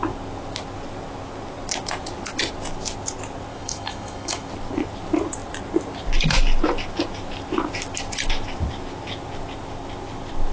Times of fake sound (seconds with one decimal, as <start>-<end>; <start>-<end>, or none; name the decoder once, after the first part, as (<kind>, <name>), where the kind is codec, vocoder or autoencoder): 3.5-4.5 (autoencoder, DAC-VAE)